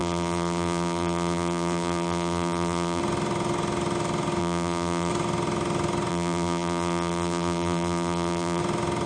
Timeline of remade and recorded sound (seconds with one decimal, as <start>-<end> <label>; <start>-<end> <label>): 0.0-3.0 remade; 3.0-4.4 recorded; 4.4-5.1 remade; 5.1-6.1 recorded; 6.1-8.6 remade; 8.6-9.1 recorded